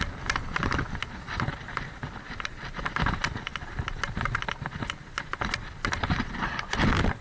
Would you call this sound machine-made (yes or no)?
no